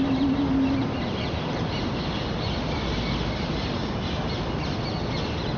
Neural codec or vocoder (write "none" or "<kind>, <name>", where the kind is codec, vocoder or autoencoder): none